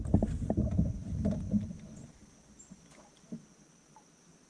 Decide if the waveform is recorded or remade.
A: recorded